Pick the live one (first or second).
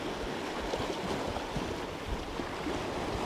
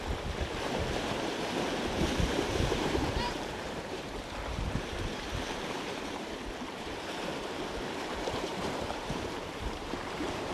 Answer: first